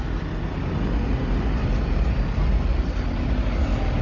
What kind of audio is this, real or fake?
real